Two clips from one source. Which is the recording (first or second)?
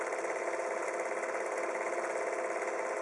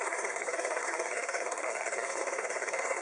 first